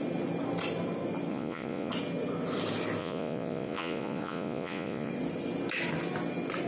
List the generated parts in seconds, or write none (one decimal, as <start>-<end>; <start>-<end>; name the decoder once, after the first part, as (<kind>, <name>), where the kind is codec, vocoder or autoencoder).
1.3-1.9 (vocoder, Vocos); 3.0-5.1